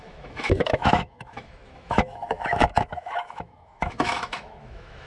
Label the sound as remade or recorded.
remade